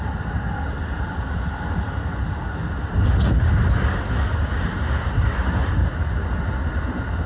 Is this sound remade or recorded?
recorded